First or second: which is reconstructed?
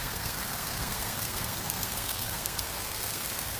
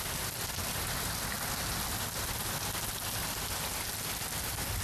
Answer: first